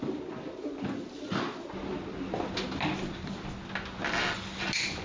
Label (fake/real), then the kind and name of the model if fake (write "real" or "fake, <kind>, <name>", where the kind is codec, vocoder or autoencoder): real